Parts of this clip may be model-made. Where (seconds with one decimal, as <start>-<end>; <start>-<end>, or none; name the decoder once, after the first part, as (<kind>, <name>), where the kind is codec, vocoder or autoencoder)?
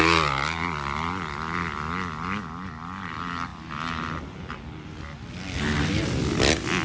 none